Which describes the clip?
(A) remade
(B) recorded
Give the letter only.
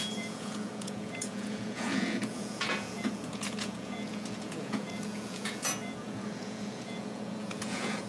A